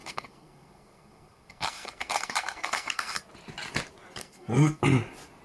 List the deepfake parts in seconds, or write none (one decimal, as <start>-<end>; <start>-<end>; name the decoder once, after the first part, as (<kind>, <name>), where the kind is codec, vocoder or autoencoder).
0.0-3.2 (codec, SNAC); 4.2-4.8